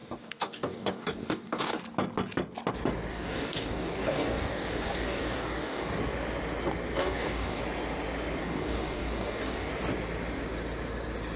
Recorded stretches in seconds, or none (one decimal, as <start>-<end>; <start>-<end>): 1.8-3.1; 6.0-7.0; 7.6-8.4; 9.7-11.4